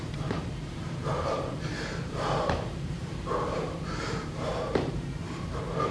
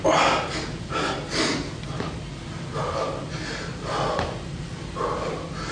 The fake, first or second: first